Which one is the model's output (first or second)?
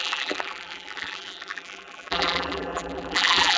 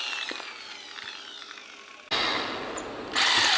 first